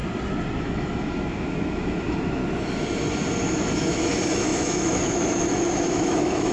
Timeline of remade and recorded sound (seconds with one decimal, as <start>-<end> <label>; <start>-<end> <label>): 0.0-0.6 recorded; 0.6-2.4 remade; 2.4-3.5 recorded; 3.5-6.5 remade